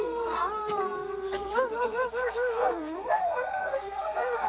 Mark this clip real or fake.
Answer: fake